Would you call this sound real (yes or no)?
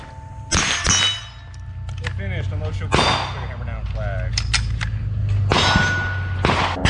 yes